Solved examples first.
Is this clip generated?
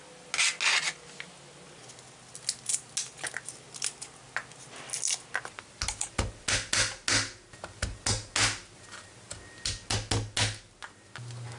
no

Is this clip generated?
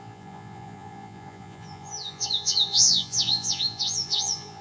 yes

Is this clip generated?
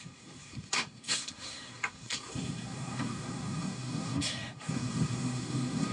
yes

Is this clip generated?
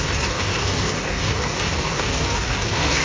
yes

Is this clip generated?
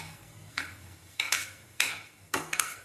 yes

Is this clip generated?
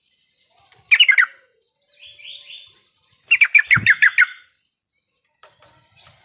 no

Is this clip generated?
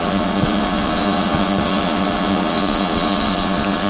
yes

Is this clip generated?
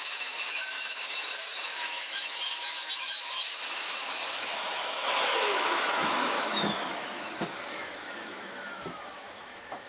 yes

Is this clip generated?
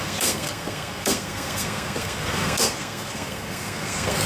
yes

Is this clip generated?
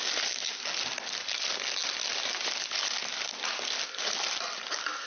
no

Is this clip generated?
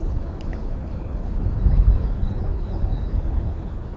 yes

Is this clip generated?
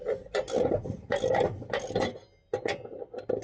no